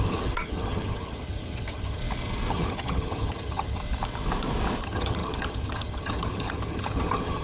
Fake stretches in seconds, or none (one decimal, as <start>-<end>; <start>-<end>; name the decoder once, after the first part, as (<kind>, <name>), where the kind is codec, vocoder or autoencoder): 0.0-2.0 (vocoder, HiFi-GAN); 2.5-3.8; 4.8-7.4